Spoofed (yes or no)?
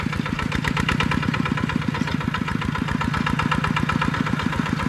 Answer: no